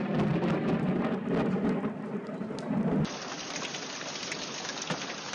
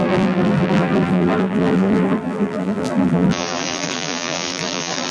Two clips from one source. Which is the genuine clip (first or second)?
first